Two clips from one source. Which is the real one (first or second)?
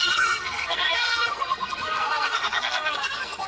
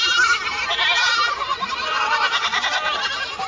second